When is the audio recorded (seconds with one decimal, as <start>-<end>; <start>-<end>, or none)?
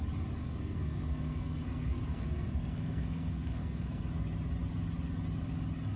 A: 0.0-0.4; 4.0-6.0